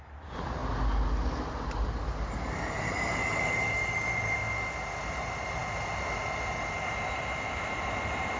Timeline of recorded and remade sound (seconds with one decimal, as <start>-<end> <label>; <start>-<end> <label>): 0.0-0.6 remade; 0.6-1.5 recorded; 1.5-4.4 remade; 4.4-5.0 recorded; 5.0-5.6 remade; 5.6-7.5 recorded; 7.5-8.4 remade